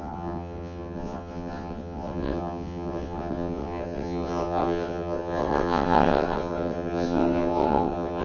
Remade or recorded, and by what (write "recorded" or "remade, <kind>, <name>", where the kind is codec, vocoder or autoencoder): remade, vocoder, WaveNeXt